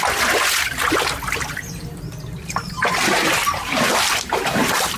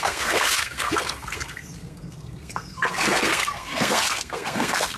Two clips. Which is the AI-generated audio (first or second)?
second